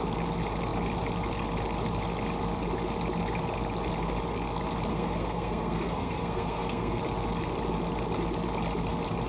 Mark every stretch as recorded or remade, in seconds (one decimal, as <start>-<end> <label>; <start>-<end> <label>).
0.0-4.9 recorded; 4.9-7.0 remade; 7.0-9.3 recorded